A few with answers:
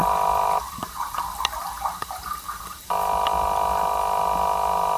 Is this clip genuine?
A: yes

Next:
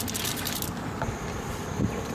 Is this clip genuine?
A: yes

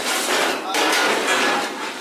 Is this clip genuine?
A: yes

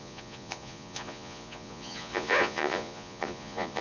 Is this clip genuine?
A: no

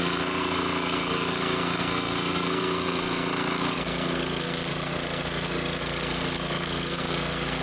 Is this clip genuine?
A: no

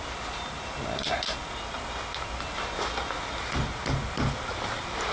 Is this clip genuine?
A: yes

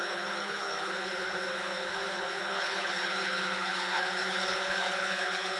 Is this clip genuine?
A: no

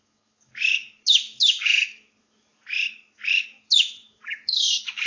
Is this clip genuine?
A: no